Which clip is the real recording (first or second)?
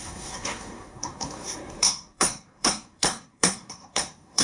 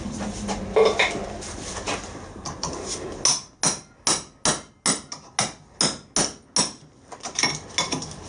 second